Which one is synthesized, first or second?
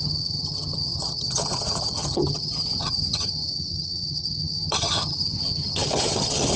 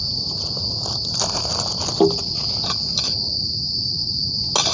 first